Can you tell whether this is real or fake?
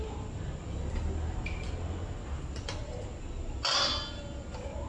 real